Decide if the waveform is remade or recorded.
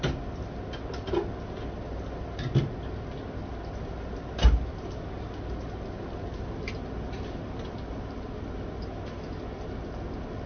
recorded